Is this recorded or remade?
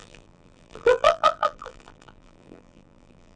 remade